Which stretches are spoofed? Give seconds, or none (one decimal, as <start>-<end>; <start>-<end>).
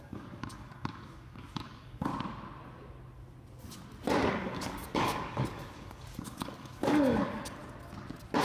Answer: 0.0-2.1; 4.3-7.6